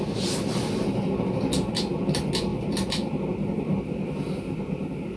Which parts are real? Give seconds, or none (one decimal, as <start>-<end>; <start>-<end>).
0.0-5.2